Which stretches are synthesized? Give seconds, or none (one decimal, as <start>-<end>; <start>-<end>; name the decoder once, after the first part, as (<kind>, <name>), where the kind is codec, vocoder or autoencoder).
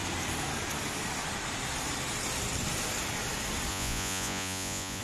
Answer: 3.7-5.0 (vocoder, Vocos)